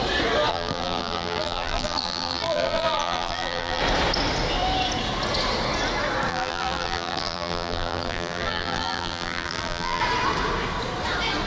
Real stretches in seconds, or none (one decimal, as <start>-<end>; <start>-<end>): 0.0-0.5; 3.8-6.3; 10.0-11.5